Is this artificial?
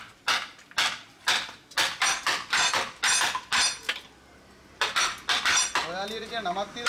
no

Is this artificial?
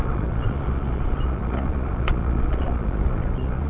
yes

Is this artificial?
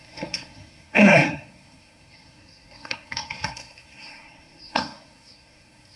yes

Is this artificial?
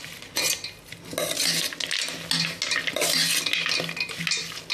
no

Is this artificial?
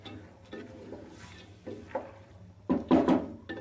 no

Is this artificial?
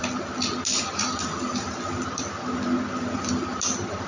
no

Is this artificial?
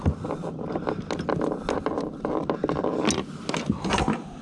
no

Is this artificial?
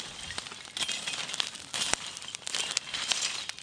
no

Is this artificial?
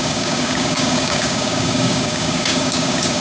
yes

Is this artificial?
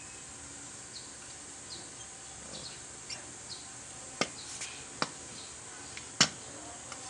no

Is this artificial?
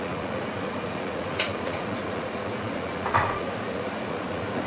yes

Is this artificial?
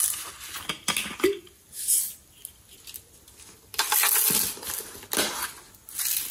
no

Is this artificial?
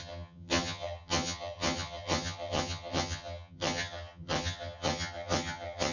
yes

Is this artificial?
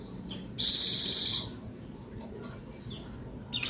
no